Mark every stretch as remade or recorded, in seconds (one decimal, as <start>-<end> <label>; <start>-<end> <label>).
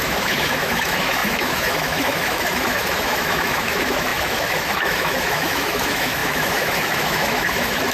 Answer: 0.0-7.9 remade